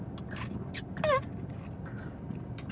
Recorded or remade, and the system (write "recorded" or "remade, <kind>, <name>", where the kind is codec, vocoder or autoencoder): recorded